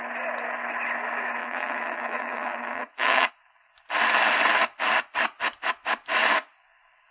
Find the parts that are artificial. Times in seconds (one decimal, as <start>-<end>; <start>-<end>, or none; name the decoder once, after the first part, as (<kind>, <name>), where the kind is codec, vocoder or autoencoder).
1.4-3.3 (vocoder, WaveNeXt)